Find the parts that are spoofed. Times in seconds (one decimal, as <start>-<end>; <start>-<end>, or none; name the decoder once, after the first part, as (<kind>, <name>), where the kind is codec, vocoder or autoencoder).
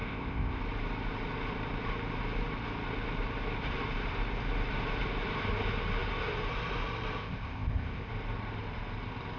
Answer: 0.0-0.6 (codec, ZipCodec); 7.2-8.1